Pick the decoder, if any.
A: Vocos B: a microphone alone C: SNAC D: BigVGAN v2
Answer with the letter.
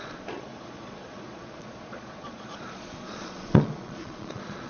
A